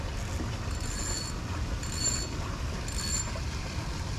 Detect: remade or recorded recorded